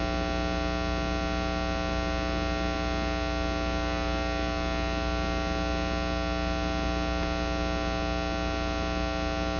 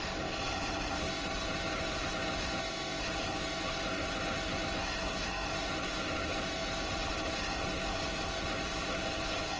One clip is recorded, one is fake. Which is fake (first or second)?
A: second